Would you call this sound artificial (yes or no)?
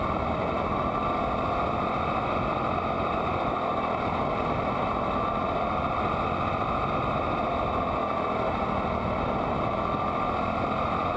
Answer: no